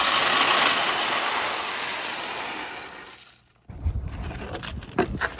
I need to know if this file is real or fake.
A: real